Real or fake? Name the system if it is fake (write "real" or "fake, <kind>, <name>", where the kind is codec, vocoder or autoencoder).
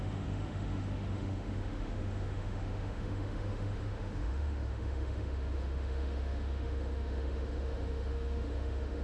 fake, autoencoder, DAC-VAE